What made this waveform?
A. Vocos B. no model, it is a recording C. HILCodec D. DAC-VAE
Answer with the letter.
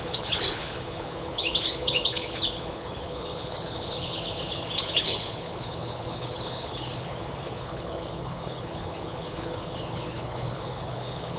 C